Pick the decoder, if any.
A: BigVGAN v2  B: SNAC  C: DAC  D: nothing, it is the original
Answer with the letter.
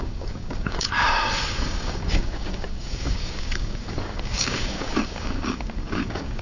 C